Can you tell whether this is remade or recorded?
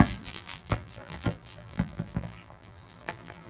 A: remade